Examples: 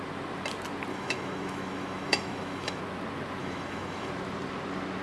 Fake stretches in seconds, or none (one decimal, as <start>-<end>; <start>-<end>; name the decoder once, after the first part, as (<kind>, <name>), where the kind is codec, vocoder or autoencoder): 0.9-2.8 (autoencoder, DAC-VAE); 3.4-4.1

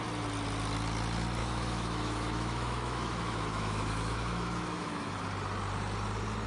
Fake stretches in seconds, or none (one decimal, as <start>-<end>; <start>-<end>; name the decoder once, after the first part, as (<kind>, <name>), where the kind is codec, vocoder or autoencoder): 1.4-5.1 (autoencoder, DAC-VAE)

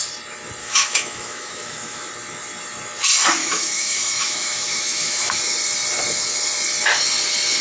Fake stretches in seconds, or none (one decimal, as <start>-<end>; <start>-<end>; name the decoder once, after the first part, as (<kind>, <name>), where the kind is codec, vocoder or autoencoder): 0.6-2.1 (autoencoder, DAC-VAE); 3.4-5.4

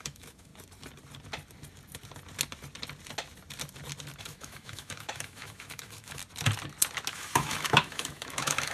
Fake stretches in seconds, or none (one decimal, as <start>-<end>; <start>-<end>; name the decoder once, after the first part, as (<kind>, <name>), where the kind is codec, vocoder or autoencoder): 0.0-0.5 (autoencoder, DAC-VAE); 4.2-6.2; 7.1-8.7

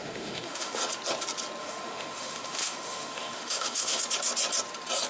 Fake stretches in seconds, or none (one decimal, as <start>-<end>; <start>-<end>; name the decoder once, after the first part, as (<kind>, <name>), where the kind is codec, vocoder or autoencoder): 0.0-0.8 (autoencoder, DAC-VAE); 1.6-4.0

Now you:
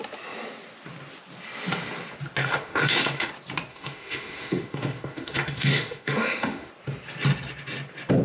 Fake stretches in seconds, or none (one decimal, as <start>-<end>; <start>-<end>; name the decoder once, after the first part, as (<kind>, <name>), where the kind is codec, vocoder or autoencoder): 2.4-3.3 (autoencoder, DAC-VAE); 3.7-6.7

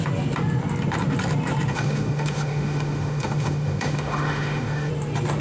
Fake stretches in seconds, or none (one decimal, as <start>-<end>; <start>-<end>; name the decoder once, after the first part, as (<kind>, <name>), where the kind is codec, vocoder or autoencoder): 1.7-4.9 (autoencoder, DAC-VAE)